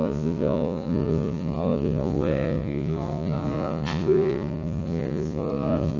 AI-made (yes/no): yes